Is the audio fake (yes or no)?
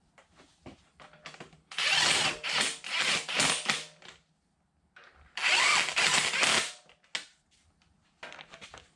no